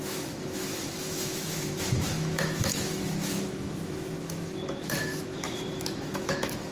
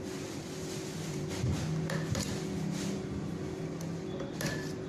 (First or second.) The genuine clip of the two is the second